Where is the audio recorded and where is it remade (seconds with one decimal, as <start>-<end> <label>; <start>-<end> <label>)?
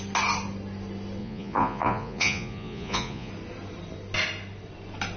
0.0-1.2 recorded; 1.2-3.3 remade; 3.3-5.2 recorded